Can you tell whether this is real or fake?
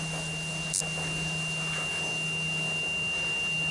real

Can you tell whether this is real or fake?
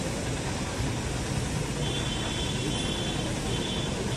real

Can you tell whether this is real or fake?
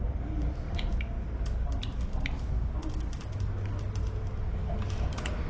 real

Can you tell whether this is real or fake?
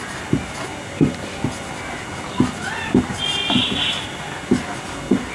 real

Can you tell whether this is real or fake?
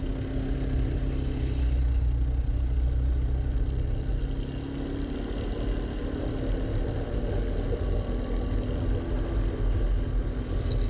real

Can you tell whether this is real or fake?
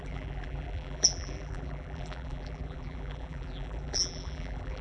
fake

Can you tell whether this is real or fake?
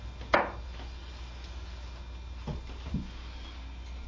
real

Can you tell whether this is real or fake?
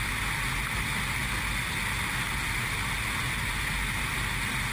real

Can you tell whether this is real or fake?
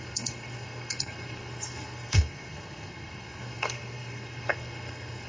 fake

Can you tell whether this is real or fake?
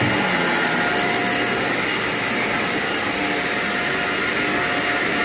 real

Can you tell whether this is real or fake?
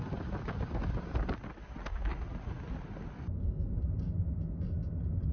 real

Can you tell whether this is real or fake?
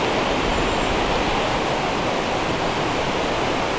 real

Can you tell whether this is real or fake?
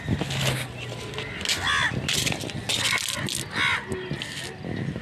real